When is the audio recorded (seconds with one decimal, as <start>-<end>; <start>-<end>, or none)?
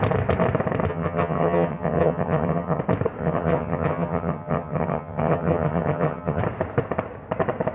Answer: 0.0-0.9; 2.8-3.2; 6.4-7.7